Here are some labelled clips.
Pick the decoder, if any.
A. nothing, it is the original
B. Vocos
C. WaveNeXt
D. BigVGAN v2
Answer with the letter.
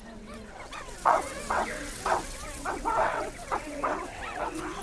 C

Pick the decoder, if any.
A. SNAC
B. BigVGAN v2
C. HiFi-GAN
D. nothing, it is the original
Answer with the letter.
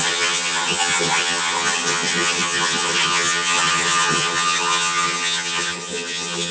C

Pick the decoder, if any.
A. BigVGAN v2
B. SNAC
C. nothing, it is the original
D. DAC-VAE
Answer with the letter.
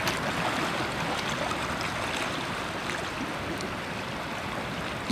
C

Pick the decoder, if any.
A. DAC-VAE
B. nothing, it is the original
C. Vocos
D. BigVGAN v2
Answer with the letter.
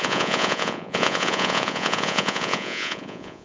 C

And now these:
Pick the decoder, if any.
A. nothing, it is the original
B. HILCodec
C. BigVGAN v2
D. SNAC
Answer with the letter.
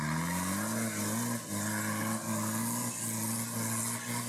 A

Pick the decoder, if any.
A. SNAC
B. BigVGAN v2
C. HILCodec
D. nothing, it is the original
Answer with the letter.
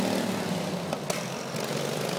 D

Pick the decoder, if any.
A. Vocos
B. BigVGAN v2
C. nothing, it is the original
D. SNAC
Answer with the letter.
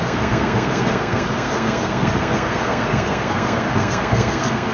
D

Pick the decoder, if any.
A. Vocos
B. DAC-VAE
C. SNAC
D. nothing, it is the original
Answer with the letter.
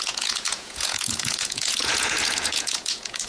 A